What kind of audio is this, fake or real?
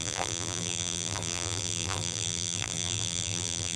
fake